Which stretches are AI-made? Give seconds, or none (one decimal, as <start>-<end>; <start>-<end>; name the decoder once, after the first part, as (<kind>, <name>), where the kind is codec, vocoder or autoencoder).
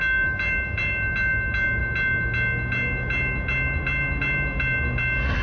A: none